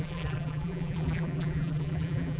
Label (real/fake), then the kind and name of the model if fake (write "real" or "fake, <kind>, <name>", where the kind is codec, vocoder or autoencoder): fake, vocoder, BigVGAN v2